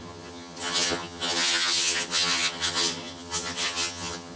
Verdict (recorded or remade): remade